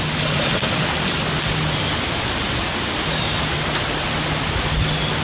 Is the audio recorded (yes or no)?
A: yes